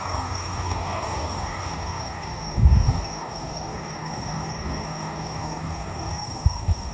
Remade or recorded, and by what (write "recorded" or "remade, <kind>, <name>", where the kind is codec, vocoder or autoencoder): remade, codec, DAC